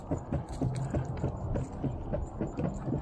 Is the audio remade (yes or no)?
no